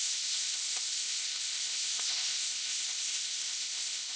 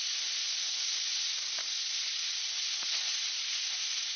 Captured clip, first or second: second